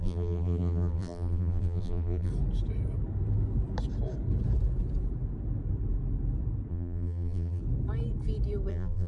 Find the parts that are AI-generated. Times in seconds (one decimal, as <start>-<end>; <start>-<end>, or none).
0.0-2.3; 6.7-7.6; 8.7-9.1